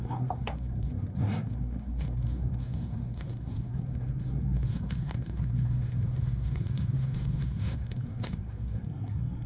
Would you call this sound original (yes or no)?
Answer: no